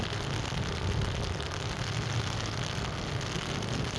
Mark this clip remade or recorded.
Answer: recorded